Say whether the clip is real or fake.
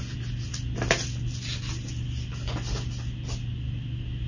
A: real